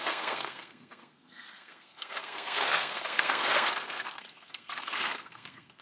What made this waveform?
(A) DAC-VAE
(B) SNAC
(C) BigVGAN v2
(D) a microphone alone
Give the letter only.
B